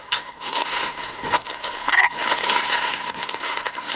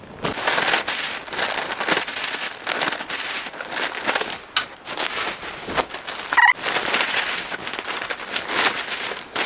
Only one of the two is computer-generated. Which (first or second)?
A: first